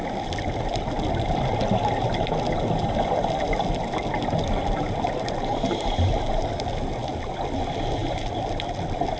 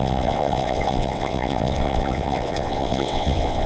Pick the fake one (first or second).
second